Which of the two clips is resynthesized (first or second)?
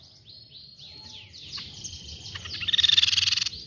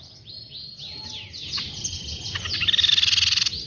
first